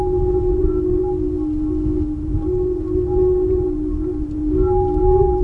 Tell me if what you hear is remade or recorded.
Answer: recorded